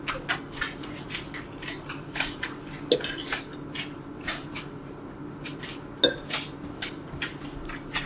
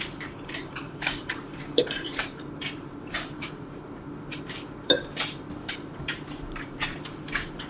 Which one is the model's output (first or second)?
second